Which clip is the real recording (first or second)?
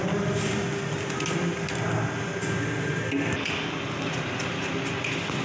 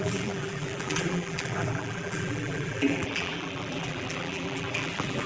first